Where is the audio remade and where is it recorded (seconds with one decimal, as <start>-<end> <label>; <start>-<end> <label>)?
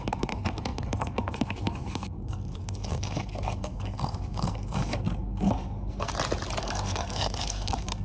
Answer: 0.0-6.1 remade; 6.1-6.6 recorded; 6.6-8.0 remade